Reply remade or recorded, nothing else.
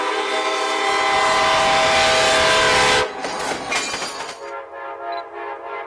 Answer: recorded